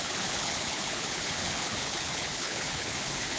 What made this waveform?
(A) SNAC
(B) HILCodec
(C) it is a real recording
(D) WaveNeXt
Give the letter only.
B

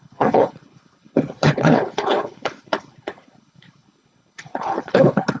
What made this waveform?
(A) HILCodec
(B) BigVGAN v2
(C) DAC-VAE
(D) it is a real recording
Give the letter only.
A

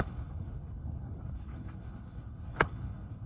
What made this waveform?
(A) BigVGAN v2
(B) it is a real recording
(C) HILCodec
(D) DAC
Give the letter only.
C